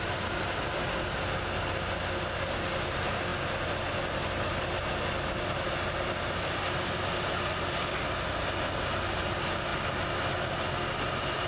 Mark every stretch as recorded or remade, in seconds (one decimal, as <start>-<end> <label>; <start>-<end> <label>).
0.0-11.5 recorded